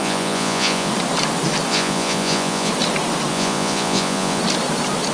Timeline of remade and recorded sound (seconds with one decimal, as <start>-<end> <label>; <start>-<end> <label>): 0.0-0.9 remade; 0.9-1.7 recorded; 1.7-2.7 remade; 2.7-3.3 recorded; 3.3-4.4 remade; 4.4-5.1 recorded